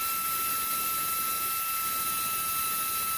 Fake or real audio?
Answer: real